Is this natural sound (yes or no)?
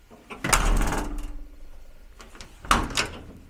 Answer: yes